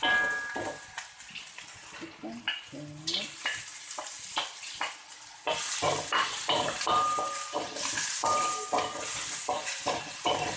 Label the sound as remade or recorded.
recorded